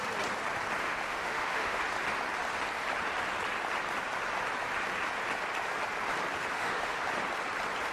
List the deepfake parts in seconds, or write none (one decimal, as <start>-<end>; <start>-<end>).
0.8-1.8; 6.5-7.0